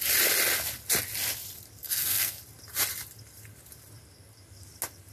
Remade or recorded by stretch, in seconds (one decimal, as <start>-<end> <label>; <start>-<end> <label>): 0.0-1.8 recorded; 1.8-2.4 remade; 2.4-5.1 recorded

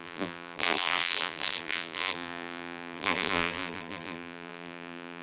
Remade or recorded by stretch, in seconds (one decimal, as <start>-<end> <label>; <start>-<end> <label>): 0.0-5.2 remade